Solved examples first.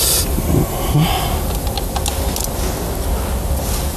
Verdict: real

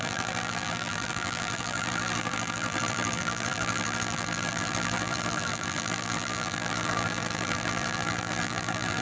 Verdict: fake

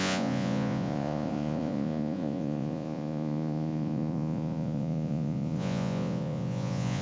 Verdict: fake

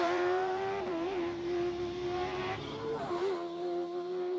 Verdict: fake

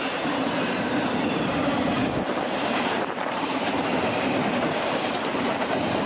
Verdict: fake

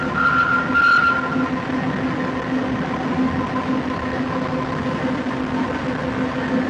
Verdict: real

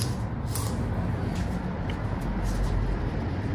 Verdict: real